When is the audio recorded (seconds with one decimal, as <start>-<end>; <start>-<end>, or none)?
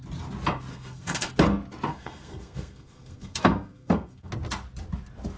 0.0-0.7; 1.3-1.9; 4.3-5.4